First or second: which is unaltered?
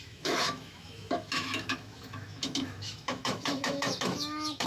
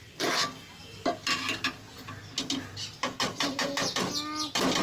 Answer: second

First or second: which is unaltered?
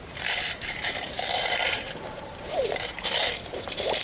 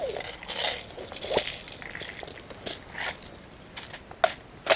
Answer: second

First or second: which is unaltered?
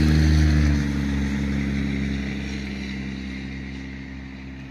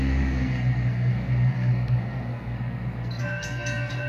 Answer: first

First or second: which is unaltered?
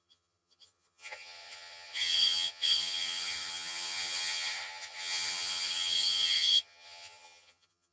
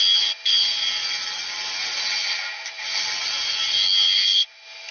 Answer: second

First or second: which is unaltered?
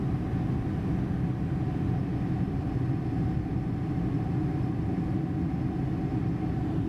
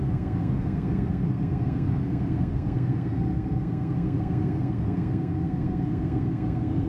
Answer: first